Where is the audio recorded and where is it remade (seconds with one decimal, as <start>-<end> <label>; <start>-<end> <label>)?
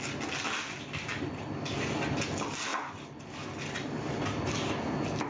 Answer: 0.0-5.3 recorded